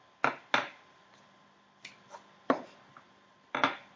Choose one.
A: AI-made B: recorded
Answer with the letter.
B